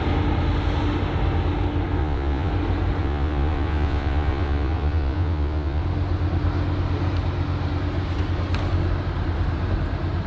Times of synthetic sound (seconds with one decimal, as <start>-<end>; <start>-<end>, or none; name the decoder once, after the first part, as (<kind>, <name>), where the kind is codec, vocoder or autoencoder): 2.0-2.5 (vocoder, Vocos); 3.0-5.8